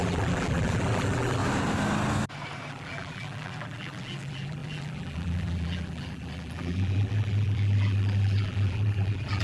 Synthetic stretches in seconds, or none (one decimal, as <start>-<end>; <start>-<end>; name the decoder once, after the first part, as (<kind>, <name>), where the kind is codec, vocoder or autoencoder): 0.0-1.4 (vocoder, BigVGAN v2); 2.7-9.4